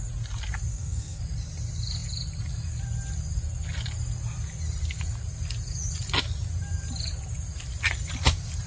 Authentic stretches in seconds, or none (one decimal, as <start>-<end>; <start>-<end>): 0.0-0.7; 1.2-8.7